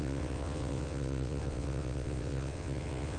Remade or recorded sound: remade